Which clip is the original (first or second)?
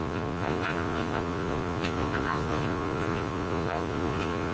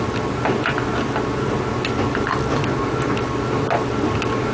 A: second